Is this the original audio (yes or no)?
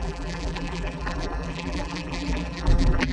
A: no